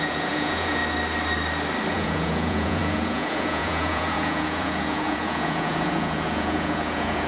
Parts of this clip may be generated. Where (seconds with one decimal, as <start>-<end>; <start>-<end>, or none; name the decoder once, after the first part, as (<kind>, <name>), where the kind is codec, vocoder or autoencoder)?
0.0-0.8 (vocoder, Vocos); 1.9-7.3